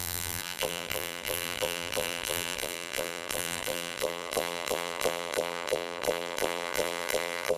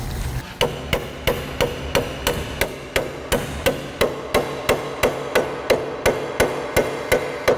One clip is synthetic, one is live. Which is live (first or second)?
second